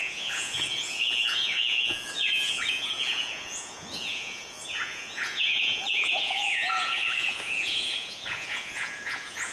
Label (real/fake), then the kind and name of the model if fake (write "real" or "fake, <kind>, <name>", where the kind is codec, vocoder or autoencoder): fake, vocoder, Vocos